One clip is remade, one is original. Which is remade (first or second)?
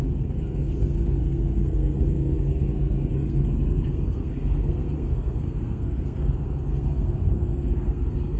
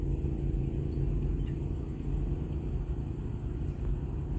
first